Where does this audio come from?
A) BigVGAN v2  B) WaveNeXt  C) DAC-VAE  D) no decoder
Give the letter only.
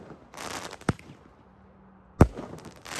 D